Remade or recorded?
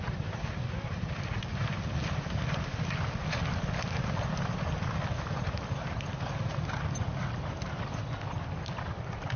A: recorded